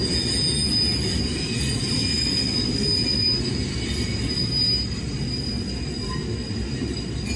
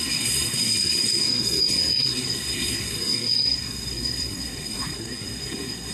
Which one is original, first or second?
first